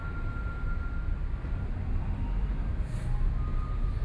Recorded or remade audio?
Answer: recorded